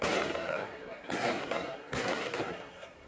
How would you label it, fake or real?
fake